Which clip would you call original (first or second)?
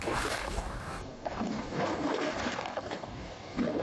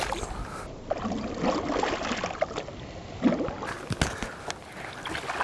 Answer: second